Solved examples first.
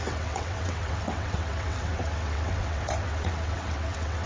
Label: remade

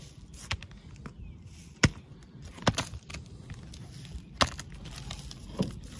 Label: recorded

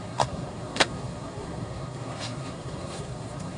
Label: remade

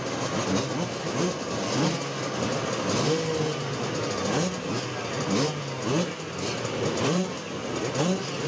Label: recorded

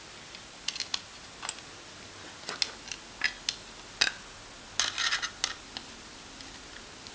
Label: recorded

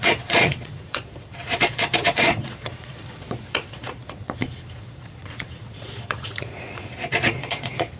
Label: remade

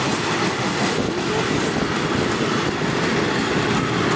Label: recorded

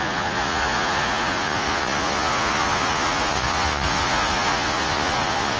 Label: remade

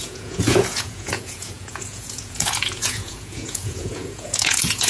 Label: remade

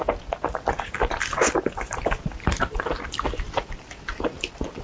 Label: recorded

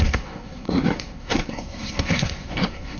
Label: remade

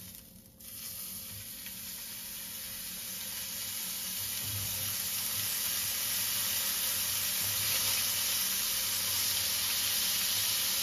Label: recorded